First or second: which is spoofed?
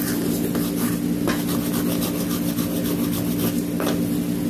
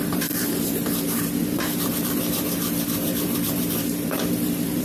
second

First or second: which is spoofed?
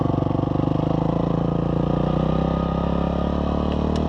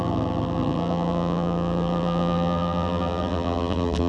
second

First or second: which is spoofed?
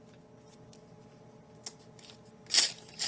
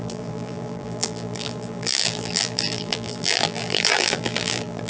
second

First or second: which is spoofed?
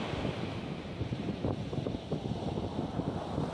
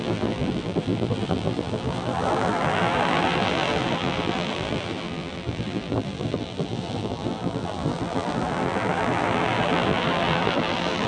second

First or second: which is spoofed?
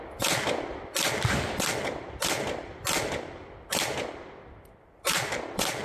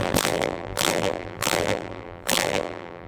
second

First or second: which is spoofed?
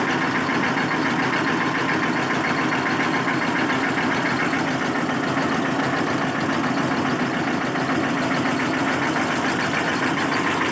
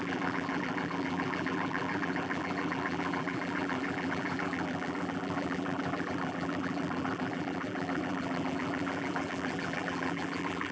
second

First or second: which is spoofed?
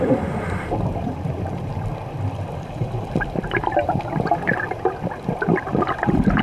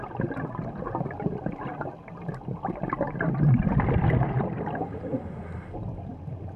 first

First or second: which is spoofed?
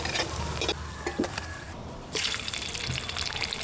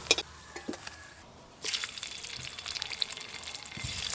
first